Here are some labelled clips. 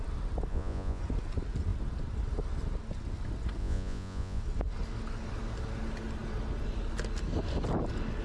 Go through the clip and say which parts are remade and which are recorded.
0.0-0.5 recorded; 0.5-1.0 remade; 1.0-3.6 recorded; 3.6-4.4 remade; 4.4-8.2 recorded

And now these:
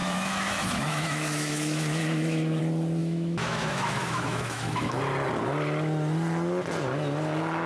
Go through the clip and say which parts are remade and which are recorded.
0.0-2.6 remade; 2.6-3.0 recorded; 3.0-5.0 remade; 5.0-7.7 recorded

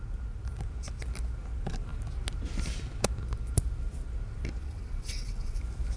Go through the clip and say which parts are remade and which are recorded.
0.0-4.6 recorded; 4.6-5.6 remade; 5.6-6.0 recorded

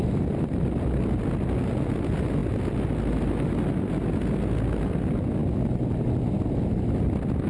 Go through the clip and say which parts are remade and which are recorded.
0.0-2.4 remade; 2.4-4.8 recorded; 4.8-7.5 remade

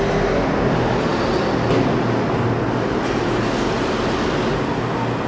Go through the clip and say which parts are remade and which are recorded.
0.0-5.3 recorded

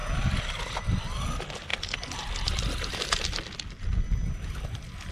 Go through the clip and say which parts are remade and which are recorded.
0.0-5.1 recorded

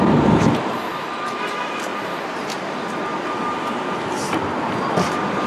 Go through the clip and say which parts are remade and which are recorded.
0.0-1.9 recorded; 1.9-2.6 remade; 2.6-5.5 recorded